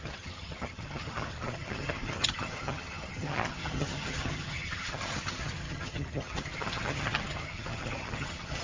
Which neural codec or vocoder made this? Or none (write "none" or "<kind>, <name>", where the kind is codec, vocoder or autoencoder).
vocoder, HiFi-GAN